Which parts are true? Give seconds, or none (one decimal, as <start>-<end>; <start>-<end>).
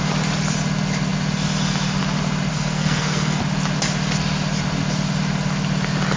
0.0-2.5; 3.4-6.2